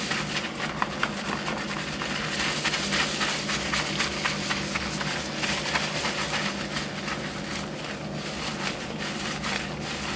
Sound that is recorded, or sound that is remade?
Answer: recorded